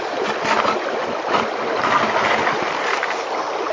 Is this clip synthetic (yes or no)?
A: no